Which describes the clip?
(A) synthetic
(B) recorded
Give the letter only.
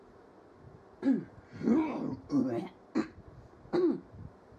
B